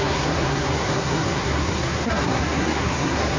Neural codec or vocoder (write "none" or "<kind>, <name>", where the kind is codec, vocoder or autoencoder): codec, SNAC